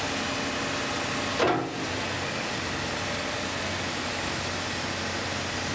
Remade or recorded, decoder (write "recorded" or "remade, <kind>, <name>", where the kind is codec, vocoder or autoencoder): recorded